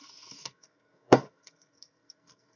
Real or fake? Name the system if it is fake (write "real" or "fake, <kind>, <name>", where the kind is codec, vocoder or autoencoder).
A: fake, codec, SNAC